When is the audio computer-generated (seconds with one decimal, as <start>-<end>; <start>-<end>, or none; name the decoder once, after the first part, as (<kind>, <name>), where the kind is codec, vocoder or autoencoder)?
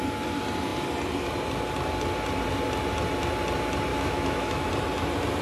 3.9-4.7 (autoencoder, DAC-VAE)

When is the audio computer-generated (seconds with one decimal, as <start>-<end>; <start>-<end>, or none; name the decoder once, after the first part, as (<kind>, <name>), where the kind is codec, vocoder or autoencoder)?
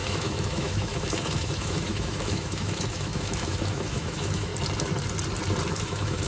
0.0-4.5 (autoencoder, DAC-VAE); 5.7-6.3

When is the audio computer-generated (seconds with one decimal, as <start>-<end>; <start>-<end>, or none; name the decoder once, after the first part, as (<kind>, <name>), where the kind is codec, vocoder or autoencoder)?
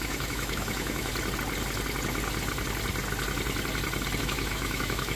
0.0-1.1 (autoencoder, DAC-VAE); 4.2-5.2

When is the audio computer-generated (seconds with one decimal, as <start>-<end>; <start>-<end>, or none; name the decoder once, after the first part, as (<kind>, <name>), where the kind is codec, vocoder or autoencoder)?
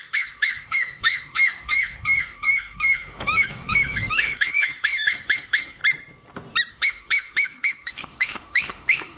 0.0-5.8 (autoencoder, DAC-VAE); 6.7-9.2